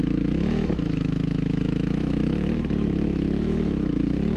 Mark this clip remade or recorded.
remade